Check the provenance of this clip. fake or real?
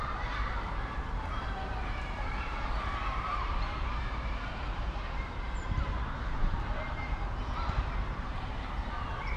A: fake